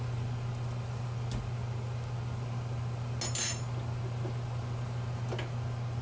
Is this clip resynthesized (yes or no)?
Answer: no